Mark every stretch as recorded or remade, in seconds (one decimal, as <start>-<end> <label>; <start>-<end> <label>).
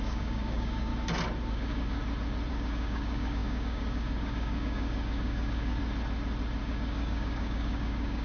0.0-0.9 remade; 0.9-1.5 recorded; 1.5-2.0 remade; 2.0-2.5 recorded; 2.5-5.8 remade; 5.8-6.6 recorded; 6.6-8.2 remade